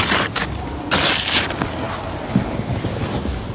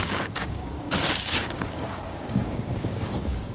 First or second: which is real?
first